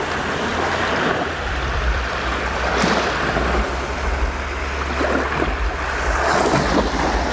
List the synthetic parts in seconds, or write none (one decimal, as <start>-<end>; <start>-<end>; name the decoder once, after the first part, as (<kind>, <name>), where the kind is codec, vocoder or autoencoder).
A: 0.5-4.3 (vocoder, BigVGAN v2)